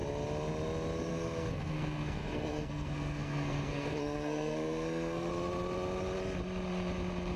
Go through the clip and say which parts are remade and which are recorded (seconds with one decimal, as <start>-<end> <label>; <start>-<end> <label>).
0.0-1.1 recorded; 1.1-5.3 remade; 5.3-7.4 recorded